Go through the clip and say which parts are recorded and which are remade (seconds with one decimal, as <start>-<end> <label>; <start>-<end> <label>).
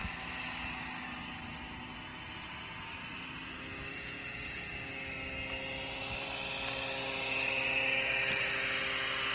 0.0-3.9 recorded; 3.9-4.7 remade; 4.7-9.3 recorded